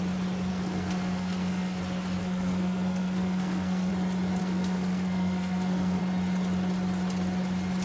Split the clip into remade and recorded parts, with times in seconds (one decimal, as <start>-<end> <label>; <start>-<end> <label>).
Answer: 0.0-0.5 recorded; 0.5-1.8 remade; 1.8-2.2 recorded; 2.2-3.9 remade; 3.9-4.4 recorded; 4.4-6.0 remade; 6.0-7.8 recorded